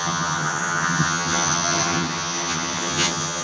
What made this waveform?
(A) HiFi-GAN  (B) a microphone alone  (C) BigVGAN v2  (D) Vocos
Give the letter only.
A